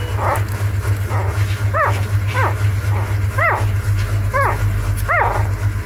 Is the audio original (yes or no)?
yes